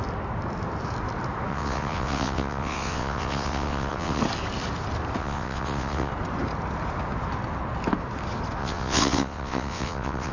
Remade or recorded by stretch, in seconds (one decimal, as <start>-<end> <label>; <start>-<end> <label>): 0.0-1.5 recorded; 1.5-4.2 remade; 4.2-5.2 recorded; 5.2-6.1 remade; 6.1-8.6 recorded; 8.6-10.3 remade